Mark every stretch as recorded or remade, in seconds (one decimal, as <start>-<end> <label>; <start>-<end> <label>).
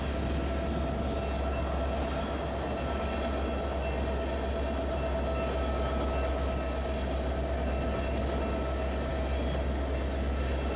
0.0-10.8 recorded